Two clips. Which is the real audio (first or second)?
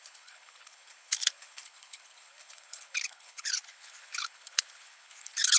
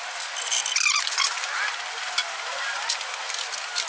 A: second